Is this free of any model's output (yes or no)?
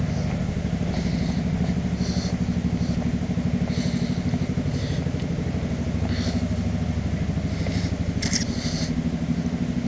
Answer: yes